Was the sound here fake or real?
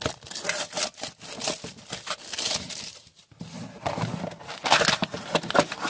real